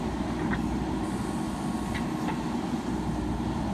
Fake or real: real